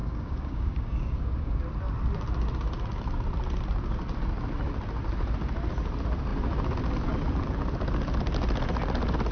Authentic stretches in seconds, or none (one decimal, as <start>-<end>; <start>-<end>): 1.6-9.3